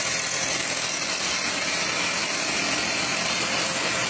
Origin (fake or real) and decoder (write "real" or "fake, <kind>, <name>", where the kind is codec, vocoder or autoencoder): real